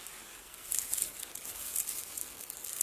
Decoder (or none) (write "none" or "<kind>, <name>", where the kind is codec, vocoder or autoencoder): codec, SNAC